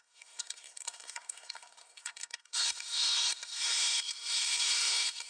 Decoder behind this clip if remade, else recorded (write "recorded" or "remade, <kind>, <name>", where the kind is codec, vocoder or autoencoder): remade, codec, SNAC